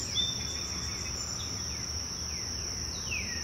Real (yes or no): yes